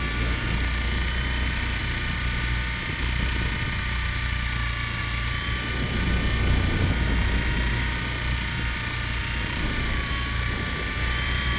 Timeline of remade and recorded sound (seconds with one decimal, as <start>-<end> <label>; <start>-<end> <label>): 0.0-11.6 recorded